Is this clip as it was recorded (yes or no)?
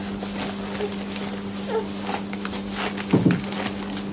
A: yes